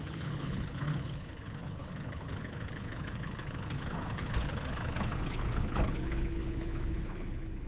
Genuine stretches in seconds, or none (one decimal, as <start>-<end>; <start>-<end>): none